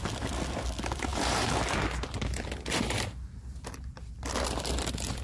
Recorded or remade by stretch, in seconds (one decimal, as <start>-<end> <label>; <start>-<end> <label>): 0.0-5.2 recorded